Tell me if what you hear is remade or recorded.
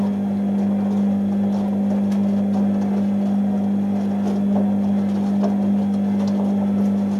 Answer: recorded